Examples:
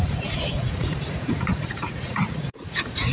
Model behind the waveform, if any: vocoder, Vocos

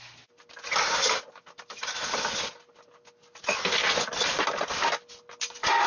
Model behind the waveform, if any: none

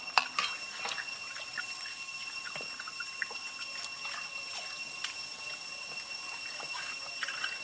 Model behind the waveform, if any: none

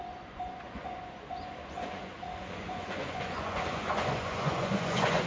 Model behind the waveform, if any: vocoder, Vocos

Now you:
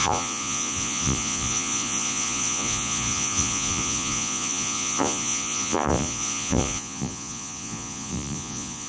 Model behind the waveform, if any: vocoder, Vocos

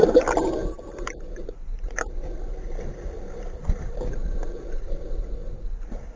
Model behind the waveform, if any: none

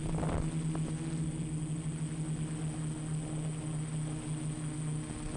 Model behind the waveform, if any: none